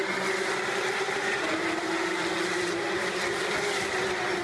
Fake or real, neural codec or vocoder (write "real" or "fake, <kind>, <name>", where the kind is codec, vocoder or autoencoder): real